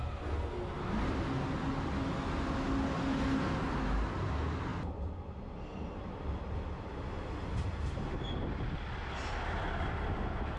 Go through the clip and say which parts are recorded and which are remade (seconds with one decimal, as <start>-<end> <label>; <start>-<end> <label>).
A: 0.0-10.6 recorded

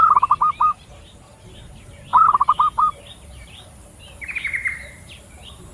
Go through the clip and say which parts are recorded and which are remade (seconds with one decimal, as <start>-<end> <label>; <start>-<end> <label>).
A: 0.0-5.7 remade